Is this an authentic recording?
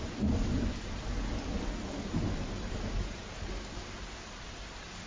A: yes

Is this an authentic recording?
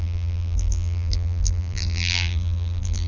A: no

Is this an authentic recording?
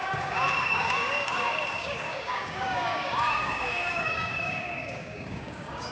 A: no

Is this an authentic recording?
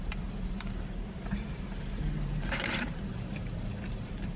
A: no